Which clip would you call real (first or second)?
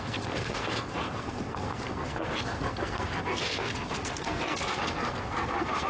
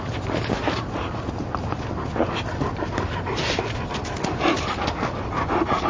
second